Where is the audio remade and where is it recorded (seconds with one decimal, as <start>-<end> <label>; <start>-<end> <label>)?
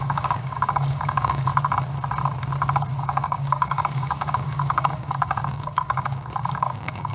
0.0-1.5 remade; 1.5-3.0 recorded; 3.0-7.1 remade